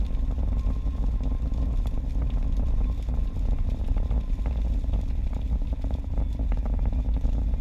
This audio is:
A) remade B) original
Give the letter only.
B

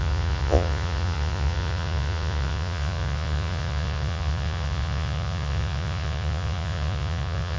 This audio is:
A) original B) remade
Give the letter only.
B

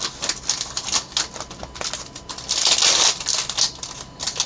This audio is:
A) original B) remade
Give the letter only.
A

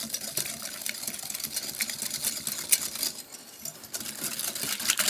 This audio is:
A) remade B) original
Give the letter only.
B